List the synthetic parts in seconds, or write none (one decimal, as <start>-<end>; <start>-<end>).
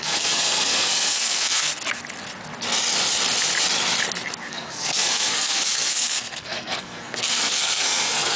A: 0.0-1.7; 4.5-8.4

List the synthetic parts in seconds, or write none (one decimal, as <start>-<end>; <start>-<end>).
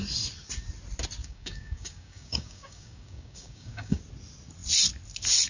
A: 1.2-4.0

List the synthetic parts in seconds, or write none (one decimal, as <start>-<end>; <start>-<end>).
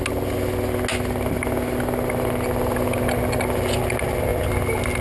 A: none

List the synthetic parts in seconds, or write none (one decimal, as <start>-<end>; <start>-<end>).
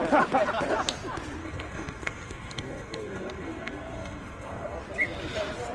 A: 1.4-4.8